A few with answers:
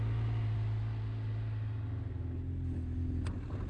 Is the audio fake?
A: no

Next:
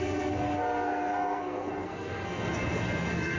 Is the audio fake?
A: yes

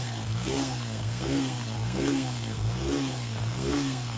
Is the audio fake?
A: yes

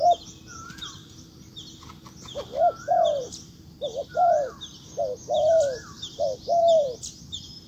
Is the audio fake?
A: yes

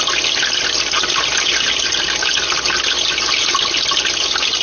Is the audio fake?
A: no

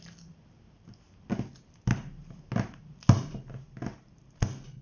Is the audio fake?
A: no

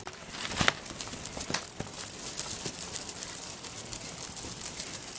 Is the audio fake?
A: yes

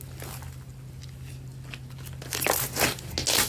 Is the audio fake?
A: no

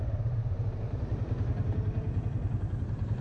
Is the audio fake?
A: yes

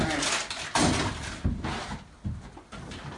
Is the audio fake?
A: no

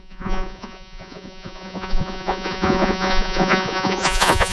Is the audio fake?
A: yes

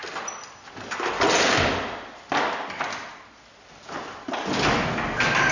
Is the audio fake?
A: no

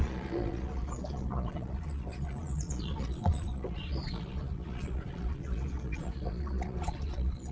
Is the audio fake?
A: yes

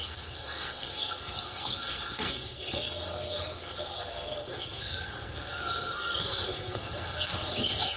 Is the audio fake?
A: yes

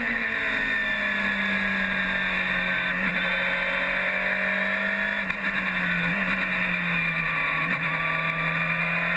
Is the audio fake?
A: no